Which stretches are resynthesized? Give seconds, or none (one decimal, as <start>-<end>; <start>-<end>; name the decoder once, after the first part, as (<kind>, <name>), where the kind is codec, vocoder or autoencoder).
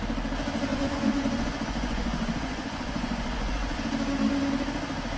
0.7-3.8 (vocoder, Vocos)